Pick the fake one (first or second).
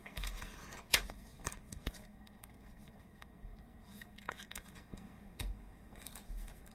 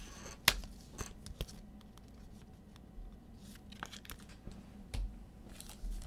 first